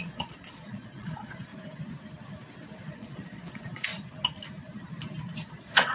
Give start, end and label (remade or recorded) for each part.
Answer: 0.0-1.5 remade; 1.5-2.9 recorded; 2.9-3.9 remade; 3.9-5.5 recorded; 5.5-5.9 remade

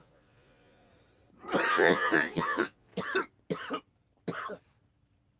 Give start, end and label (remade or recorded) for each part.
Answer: 0.0-0.9 remade; 0.9-1.7 recorded; 1.7-2.9 remade; 2.9-5.4 recorded

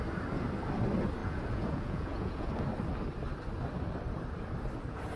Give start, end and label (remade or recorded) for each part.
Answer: 0.0-1.2 recorded; 1.2-2.5 remade; 2.5-5.2 recorded

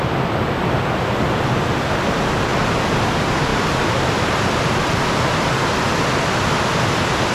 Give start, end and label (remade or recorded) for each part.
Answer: 0.0-7.3 recorded

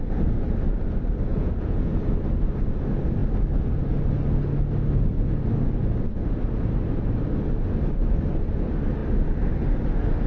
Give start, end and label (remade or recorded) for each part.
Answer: 0.0-1.3 recorded; 1.3-1.9 remade; 1.9-10.3 recorded

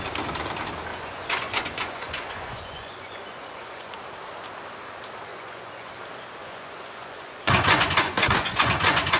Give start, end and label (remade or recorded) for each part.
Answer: 0.0-0.9 recorded; 0.9-3.9 remade; 3.9-5.3 recorded; 5.3-5.9 remade; 5.9-6.4 recorded; 6.4-9.2 remade

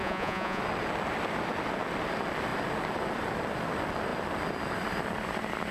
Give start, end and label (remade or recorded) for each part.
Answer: 0.0-0.6 remade; 0.6-5.7 recorded

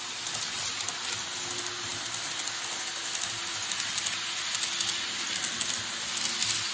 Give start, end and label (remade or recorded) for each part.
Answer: 0.0-6.7 recorded